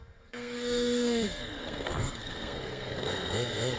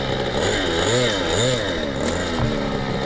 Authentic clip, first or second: second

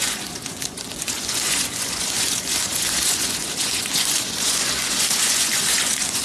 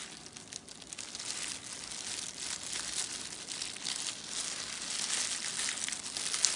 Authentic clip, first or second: second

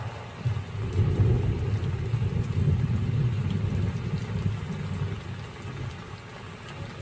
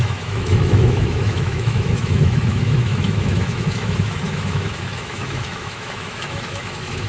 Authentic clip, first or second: first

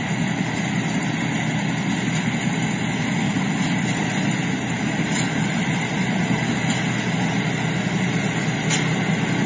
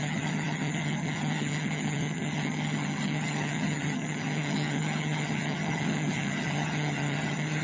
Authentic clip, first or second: first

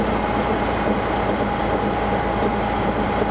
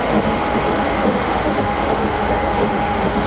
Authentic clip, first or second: first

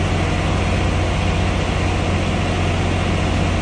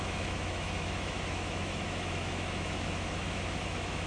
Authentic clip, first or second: first